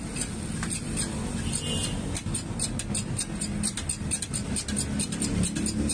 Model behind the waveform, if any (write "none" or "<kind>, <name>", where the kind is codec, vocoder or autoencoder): none